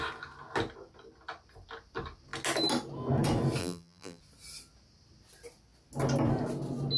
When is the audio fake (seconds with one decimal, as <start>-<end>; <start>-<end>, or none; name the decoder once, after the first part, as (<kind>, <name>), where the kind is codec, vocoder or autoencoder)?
3.6-4.2 (vocoder, BigVGAN v2)